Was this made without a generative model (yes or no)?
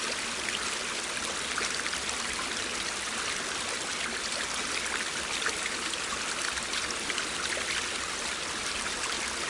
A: yes